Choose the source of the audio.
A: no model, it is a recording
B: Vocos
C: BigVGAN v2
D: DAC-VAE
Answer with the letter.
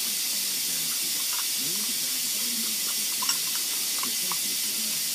A